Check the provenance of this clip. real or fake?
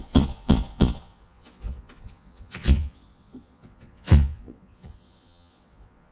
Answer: fake